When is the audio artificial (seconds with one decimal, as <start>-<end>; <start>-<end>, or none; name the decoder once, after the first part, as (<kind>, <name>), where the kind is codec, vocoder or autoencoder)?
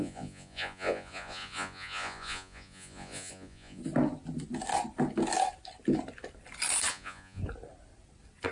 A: 0.0-3.8 (vocoder, Vocos); 6.9-7.4